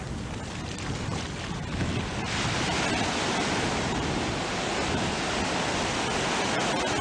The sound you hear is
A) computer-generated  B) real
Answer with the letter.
B